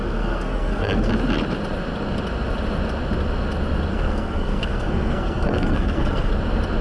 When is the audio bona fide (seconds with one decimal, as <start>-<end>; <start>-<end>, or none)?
1.1-3.9; 6.3-6.8

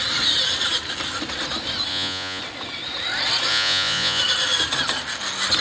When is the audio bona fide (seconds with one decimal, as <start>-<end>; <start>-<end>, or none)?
0.0-1.9; 2.4-3.5; 4.2-5.6

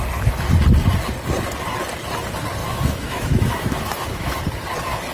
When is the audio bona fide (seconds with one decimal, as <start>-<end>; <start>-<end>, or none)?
0.0-2.6; 4.4-5.1

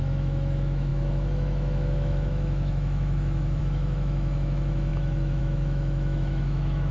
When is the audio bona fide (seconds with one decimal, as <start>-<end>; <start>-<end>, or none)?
none

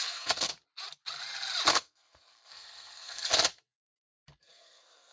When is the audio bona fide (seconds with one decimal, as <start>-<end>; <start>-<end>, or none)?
0.5-1.7; 3.3-4.4

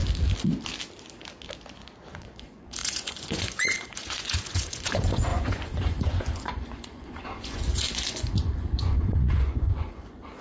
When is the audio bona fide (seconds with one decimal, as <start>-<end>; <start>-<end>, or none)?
0.0-2.1

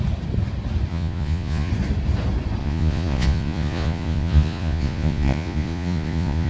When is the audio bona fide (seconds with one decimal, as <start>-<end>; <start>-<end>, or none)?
0.0-0.9; 1.7-2.6